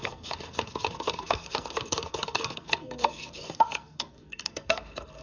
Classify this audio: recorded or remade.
remade